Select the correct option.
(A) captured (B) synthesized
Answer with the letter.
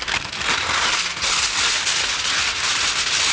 A